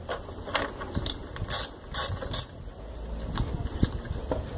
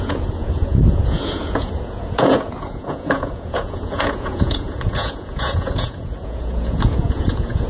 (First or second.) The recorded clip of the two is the first